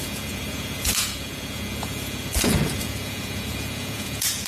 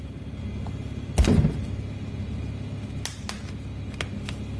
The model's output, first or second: first